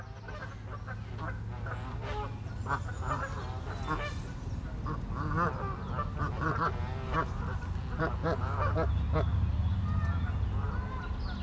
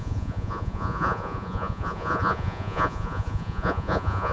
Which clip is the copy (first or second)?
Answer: second